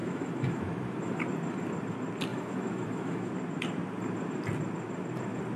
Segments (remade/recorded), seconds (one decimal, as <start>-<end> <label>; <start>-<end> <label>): 0.0-1.2 remade; 1.2-2.3 recorded; 2.3-3.3 remade; 3.3-5.6 recorded